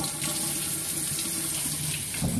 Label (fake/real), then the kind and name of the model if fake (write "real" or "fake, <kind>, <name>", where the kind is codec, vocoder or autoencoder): real